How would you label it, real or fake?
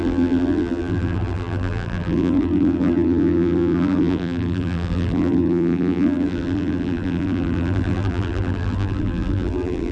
fake